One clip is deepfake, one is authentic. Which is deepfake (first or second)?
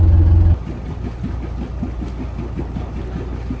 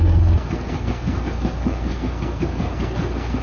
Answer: second